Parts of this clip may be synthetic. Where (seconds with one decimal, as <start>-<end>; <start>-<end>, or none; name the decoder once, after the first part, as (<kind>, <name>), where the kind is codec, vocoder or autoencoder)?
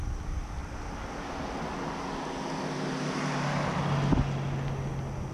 none